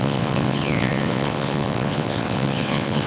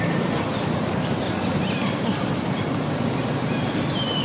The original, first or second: second